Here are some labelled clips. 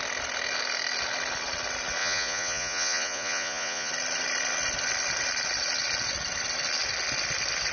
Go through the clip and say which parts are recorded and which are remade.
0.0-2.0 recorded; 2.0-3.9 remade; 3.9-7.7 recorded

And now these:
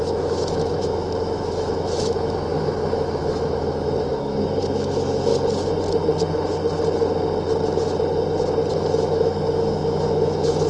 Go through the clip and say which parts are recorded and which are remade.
0.0-5.3 remade; 5.3-8.7 recorded; 8.7-10.7 remade

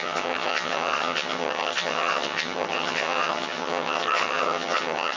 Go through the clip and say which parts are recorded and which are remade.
0.0-5.2 remade

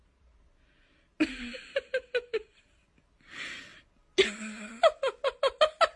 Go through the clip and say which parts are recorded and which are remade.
0.0-6.0 recorded

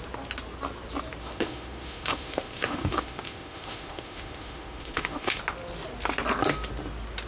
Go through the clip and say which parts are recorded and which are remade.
0.0-1.2 recorded; 1.2-5.4 remade; 5.4-7.3 recorded